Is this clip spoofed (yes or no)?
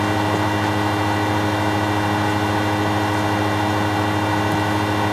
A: no